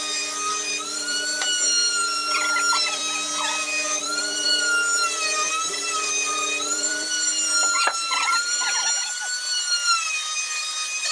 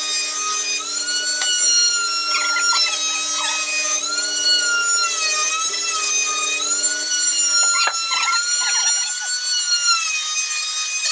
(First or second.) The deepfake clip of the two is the first